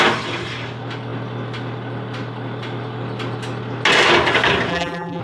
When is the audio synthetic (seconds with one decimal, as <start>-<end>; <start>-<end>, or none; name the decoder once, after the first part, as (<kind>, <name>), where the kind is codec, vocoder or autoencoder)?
4.7-5.2 (vocoder, BigVGAN v2)